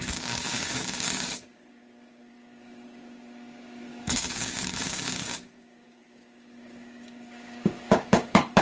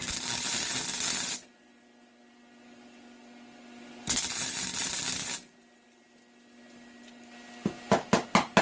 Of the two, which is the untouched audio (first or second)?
second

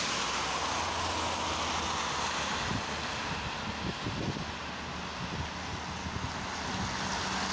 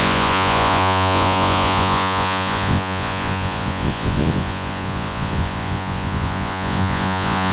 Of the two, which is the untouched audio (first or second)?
first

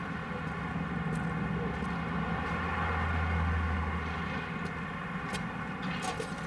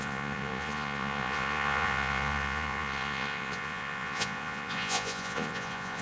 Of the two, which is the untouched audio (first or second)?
first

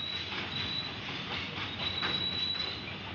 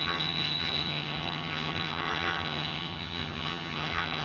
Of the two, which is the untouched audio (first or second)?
first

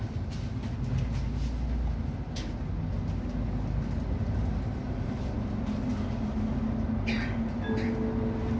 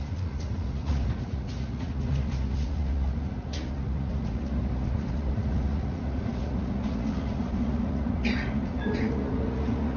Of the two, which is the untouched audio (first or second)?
first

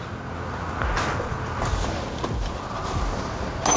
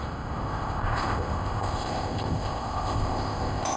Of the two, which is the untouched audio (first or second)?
first